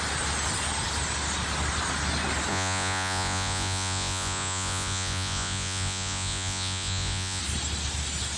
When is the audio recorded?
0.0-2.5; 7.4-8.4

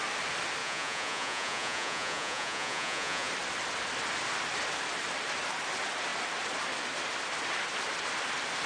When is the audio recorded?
0.0-0.6; 3.3-8.7

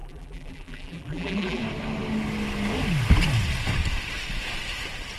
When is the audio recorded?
1.6-5.2

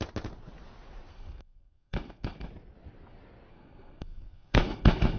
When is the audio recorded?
0.0-1.1; 2.5-3.5

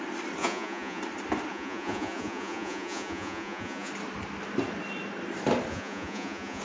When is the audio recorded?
0.0-0.4; 1.0-1.5; 3.9-5.7

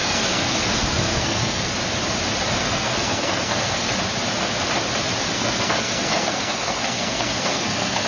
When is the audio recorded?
1.7-2.6; 3.9-5.3

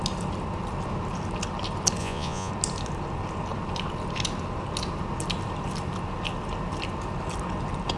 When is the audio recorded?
0.0-2.0; 2.5-8.0

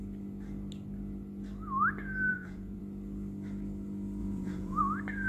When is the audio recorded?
0.0-2.3; 2.8-4.2; 4.8-5.3